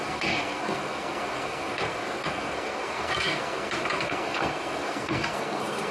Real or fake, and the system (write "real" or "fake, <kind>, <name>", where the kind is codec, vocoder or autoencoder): fake, codec, SNAC